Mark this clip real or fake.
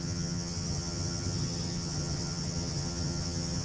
fake